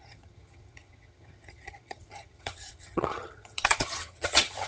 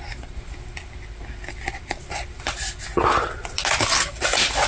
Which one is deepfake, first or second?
first